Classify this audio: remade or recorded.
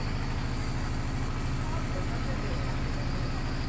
recorded